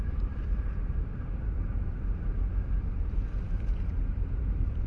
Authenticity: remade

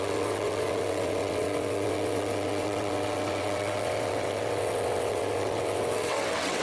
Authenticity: remade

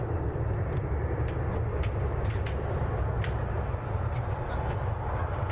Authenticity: recorded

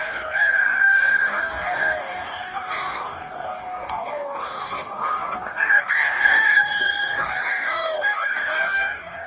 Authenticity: remade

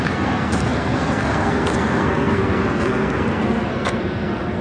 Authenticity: remade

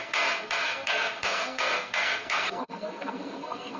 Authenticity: remade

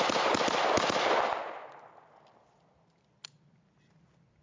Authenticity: recorded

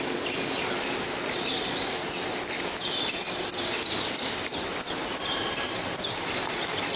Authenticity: remade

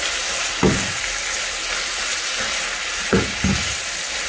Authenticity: recorded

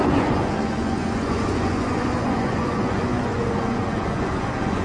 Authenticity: remade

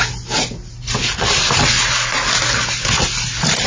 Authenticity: recorded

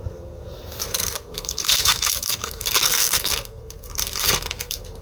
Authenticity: remade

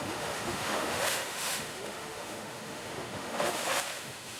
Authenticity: remade